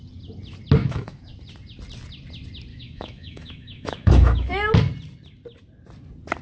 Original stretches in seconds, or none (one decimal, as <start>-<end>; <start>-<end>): 0.0-0.8; 1.3-2.7; 4.5-6.4